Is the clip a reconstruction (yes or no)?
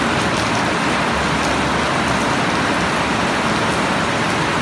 no